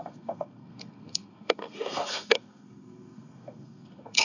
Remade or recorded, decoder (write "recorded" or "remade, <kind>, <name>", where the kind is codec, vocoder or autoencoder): remade, codec, SNAC